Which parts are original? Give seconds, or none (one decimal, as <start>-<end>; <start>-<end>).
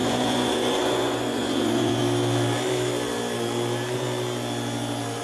2.0-5.2